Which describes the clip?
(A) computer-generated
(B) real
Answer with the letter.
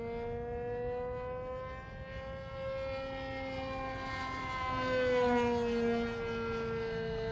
B